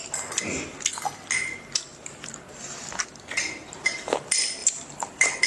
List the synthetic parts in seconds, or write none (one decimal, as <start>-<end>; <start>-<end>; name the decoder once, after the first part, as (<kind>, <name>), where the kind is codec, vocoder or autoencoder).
4.6-5.5 (vocoder, BigVGAN v2)